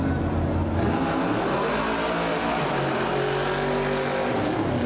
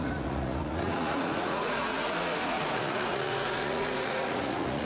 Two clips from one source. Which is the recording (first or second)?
first